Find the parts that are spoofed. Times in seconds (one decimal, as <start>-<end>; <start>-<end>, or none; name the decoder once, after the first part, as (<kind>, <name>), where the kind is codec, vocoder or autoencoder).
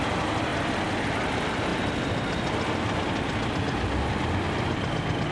none